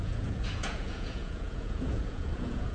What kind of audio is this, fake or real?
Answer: fake